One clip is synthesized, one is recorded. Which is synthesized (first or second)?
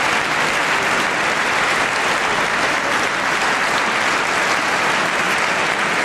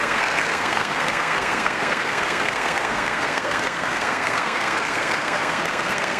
second